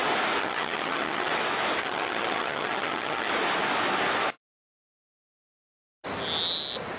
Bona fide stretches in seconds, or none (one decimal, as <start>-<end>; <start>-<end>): 0.0-0.4; 1.3-1.8; 3.3-7.0